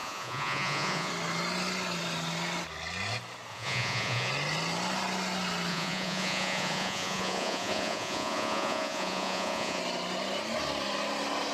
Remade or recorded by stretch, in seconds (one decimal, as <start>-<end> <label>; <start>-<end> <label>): 0.0-1.1 remade; 1.1-3.5 recorded; 3.5-4.3 remade; 4.3-5.7 recorded; 5.7-9.8 remade; 9.8-11.5 recorded